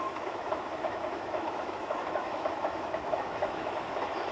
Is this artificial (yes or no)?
yes